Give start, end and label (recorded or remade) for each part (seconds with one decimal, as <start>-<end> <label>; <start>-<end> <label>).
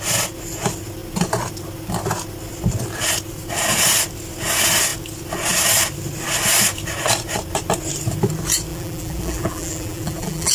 0.0-8.7 recorded; 8.7-10.5 remade